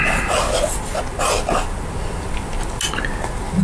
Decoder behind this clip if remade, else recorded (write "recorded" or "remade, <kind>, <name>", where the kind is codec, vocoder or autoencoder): recorded